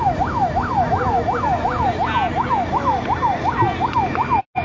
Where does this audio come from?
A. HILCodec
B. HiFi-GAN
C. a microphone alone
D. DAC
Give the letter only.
C